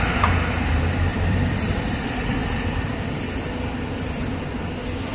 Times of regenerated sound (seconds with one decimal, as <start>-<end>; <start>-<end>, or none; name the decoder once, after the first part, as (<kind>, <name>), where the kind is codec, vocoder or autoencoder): 1.1-2.9 (vocoder, BigVGAN v2)